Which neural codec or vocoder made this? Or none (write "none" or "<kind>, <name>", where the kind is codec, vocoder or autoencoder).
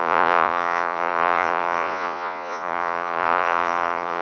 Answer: vocoder, Vocos